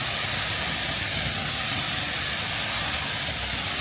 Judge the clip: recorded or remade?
recorded